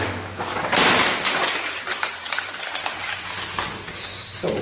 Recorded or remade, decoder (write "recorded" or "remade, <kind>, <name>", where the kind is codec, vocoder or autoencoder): recorded